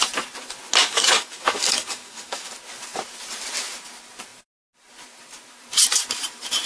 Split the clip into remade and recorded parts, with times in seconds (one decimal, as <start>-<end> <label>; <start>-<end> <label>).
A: 0.0-0.8 recorded; 0.8-2.5 remade; 2.5-6.7 recorded